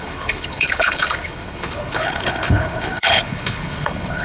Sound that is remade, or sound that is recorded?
remade